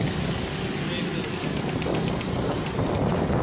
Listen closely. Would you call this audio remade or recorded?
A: recorded